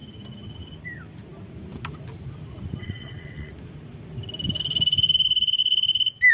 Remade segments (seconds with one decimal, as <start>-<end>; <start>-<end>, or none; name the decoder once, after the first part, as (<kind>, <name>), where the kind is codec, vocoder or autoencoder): 2.8-3.5 (vocoder, WaveNeXt)